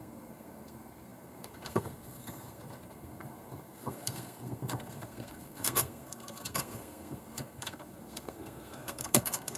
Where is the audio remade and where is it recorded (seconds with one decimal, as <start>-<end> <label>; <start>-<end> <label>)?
0.0-9.6 remade